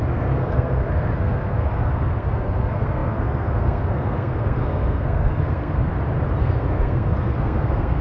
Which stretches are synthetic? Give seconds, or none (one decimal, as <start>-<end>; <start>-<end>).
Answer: 0.0-5.9; 6.4-8.0